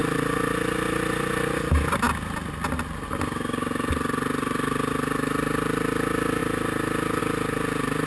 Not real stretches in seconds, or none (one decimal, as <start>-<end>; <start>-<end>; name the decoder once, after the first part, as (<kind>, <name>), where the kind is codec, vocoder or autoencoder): none